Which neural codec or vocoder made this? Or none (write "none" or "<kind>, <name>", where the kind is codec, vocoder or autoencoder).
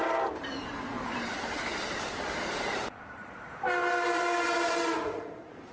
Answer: vocoder, BigVGAN v2